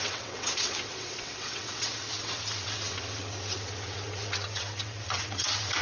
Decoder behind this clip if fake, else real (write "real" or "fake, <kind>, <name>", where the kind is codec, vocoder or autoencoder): fake, vocoder, WaveNeXt